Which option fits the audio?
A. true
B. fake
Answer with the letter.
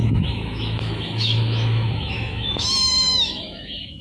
B